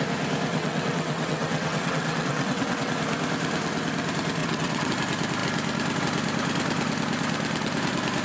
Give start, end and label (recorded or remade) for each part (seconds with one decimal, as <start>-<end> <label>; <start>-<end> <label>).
0.0-0.5 recorded; 0.5-2.9 remade; 2.9-4.4 recorded; 4.4-4.9 remade; 4.9-8.2 recorded